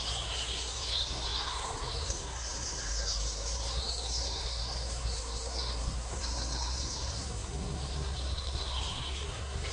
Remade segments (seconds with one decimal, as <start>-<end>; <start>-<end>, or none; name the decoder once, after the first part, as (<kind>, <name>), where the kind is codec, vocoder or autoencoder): 0.0-9.7 (codec, SNAC)